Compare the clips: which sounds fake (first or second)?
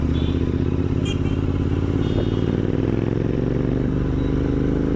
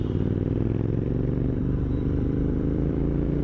second